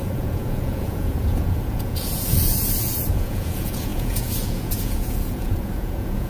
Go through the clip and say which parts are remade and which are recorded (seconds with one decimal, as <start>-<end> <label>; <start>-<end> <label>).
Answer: 0.0-6.3 remade